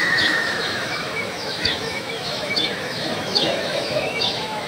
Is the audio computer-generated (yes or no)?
yes